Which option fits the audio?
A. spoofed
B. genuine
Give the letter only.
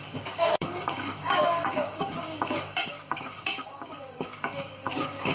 A